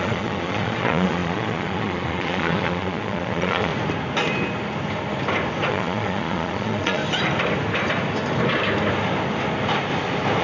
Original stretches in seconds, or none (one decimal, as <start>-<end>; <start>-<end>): 3.7-5.7; 7.0-10.4